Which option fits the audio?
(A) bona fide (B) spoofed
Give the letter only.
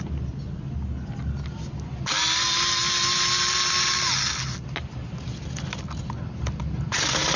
A